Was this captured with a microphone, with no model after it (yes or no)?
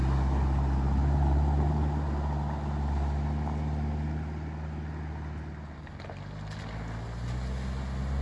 yes